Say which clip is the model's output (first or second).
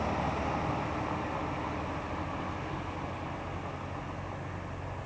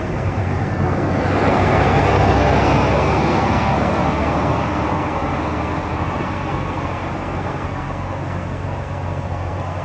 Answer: second